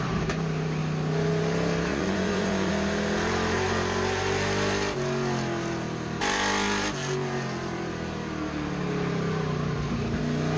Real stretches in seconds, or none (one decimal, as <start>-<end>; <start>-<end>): 0.0-1.9; 2.7-10.6